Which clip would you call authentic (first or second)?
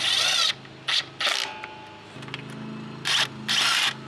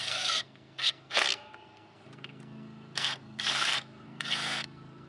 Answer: first